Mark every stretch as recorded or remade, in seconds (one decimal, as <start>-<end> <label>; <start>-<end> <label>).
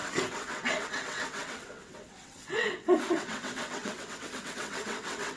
0.0-5.4 remade